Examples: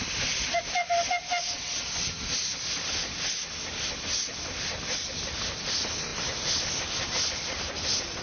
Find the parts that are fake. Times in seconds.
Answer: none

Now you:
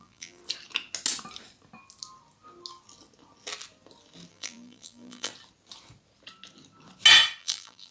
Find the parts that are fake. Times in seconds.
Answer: 0.0-0.4 (vocoder, BigVGAN v2); 4.3-5.3; 7.4-7.9